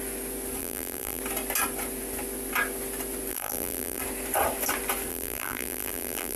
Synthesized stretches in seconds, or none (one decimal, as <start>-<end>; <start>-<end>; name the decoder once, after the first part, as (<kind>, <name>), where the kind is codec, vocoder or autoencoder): 0.6-1.2 (vocoder, BigVGAN v2); 3.3-4.0; 5.1-6.4